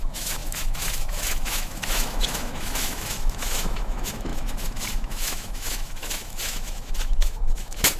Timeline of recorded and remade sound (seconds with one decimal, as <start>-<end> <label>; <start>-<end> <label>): 0.0-8.0 remade